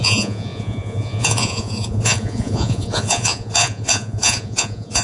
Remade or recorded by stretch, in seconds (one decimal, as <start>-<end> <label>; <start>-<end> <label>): 0.0-5.0 remade